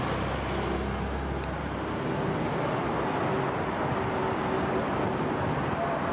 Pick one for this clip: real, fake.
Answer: real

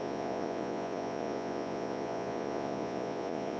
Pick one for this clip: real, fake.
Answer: fake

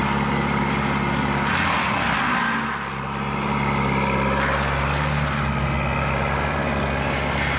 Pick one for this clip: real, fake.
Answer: real